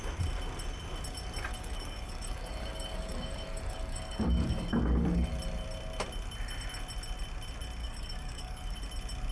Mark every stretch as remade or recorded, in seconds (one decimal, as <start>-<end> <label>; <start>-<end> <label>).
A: 0.0-1.5 recorded; 1.5-5.3 remade; 5.3-7.8 recorded; 7.8-8.8 remade; 8.8-9.3 recorded